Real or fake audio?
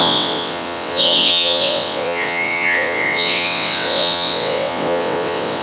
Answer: fake